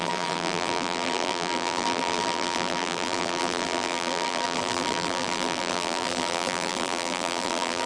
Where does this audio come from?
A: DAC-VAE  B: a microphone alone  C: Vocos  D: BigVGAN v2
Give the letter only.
D